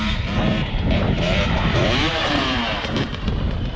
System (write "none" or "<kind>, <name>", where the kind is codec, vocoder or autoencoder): vocoder, BigVGAN v2